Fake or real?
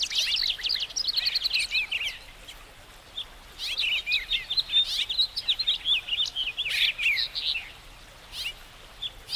real